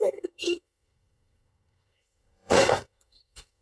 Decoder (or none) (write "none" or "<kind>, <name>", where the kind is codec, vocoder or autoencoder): codec, SNAC